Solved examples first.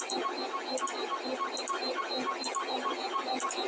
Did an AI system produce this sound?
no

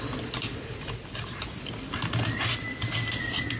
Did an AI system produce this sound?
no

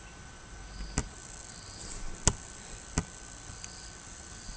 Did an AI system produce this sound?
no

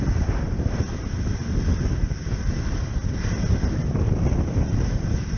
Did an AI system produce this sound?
no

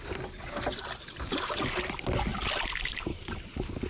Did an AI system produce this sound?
no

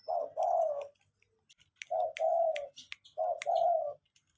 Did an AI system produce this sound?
no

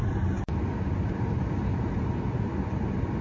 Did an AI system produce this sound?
no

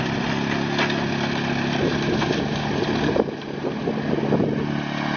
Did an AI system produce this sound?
no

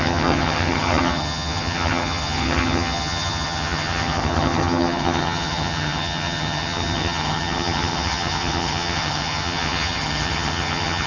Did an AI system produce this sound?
yes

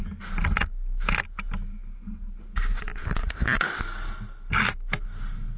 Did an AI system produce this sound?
no